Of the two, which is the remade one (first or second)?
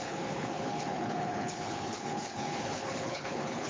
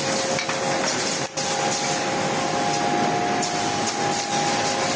first